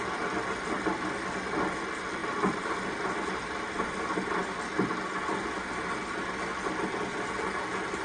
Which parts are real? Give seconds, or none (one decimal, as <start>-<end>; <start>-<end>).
0.0-8.0